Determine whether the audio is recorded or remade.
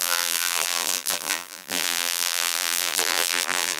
remade